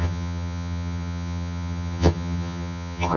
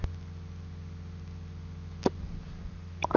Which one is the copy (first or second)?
first